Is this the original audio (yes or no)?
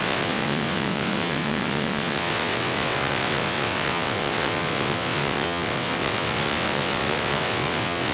no